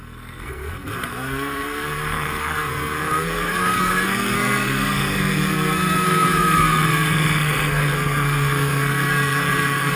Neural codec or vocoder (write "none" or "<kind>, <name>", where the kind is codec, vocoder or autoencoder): codec, SNAC